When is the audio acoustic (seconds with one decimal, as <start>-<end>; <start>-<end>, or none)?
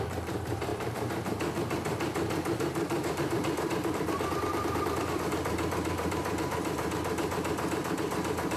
none